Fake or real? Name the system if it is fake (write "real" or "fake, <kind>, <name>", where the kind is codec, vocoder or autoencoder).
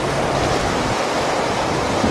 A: real